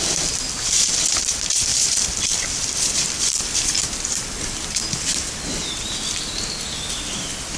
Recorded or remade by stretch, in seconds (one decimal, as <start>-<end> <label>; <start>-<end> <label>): 0.0-1.7 recorded; 1.7-6.3 remade; 6.3-7.6 recorded